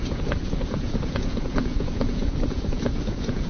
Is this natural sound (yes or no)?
no